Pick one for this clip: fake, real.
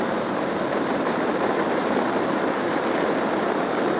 fake